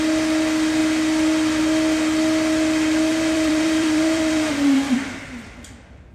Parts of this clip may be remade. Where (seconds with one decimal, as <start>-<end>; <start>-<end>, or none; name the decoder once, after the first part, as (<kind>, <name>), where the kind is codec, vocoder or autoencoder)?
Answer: 3.1-6.1 (vocoder, BigVGAN v2)